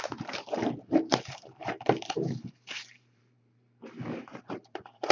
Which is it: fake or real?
fake